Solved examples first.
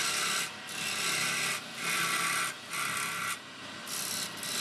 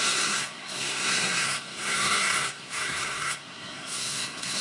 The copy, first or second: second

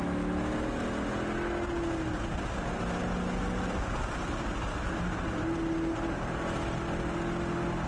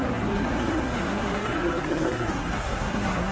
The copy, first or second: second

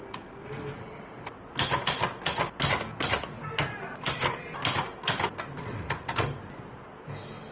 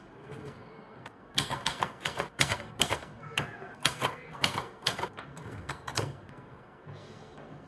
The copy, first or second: second